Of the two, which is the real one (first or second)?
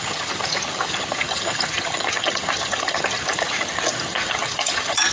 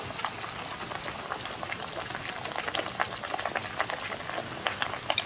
second